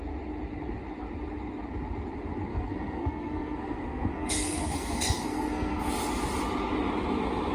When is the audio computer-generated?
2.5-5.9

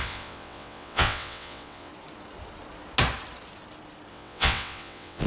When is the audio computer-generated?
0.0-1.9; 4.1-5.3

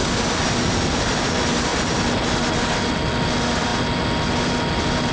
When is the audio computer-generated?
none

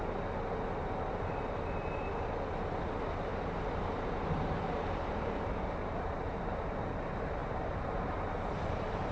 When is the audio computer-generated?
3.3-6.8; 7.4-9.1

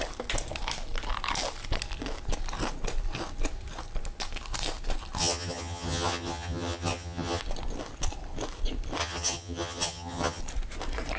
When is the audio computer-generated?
5.2-7.4; 9.0-10.4

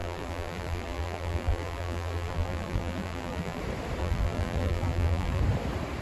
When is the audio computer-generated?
0.0-3.6; 4.0-5.4

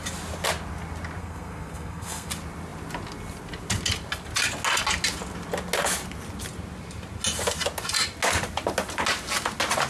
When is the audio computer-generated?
1.2-2.3